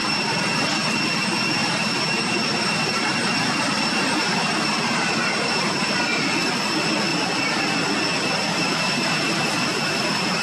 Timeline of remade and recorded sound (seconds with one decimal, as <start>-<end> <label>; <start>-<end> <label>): 0.0-0.9 remade; 0.9-1.6 recorded; 1.6-6.0 remade; 6.0-7.1 recorded; 7.1-7.6 remade; 7.6-8.1 recorded; 8.1-9.4 remade; 9.4-10.4 recorded